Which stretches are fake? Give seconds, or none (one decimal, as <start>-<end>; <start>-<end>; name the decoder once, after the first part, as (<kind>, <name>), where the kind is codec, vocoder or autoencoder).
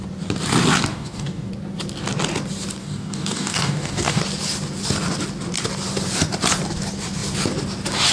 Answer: 0.9-1.5 (codec, DAC); 2.8-4.2